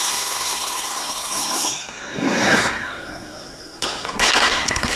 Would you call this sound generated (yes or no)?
yes